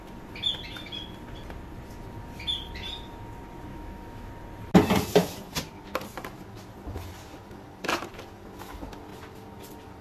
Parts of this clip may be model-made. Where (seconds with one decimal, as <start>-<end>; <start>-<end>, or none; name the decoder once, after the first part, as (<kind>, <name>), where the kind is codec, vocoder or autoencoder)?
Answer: 3.7-4.3 (autoencoder, DAC-VAE)